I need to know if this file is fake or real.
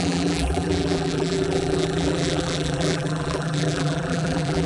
fake